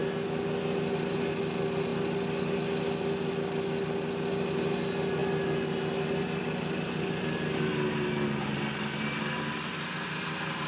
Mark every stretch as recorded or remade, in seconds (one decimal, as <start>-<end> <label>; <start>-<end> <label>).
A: 0.0-10.7 recorded